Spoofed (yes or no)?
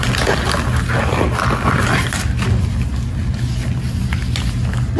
no